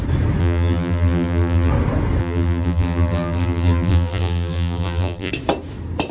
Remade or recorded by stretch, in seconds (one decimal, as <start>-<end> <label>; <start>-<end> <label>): 0.0-0.4 recorded; 0.4-1.7 remade; 1.7-2.2 recorded; 2.2-5.3 remade; 5.3-6.1 recorded